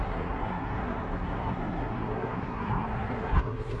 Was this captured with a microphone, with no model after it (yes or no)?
no